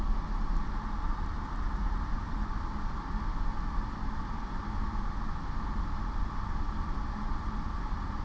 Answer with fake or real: real